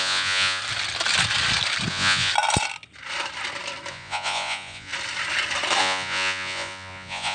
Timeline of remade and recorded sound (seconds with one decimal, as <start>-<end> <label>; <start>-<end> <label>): 0.0-0.6 remade; 0.6-1.9 recorded; 1.9-2.3 remade; 2.3-3.9 recorded; 3.9-4.9 remade; 4.9-5.8 recorded; 5.8-7.3 remade